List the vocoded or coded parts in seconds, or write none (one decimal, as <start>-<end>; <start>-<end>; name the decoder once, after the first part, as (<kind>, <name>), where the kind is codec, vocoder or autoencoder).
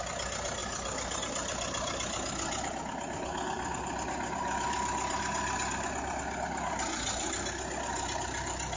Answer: none